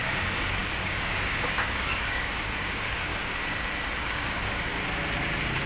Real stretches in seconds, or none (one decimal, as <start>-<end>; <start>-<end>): 3.1-4.0; 4.7-5.7